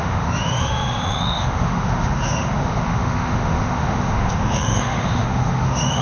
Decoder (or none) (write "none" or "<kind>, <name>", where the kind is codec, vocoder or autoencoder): autoencoder, DAC-VAE